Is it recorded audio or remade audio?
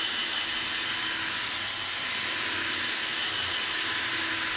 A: recorded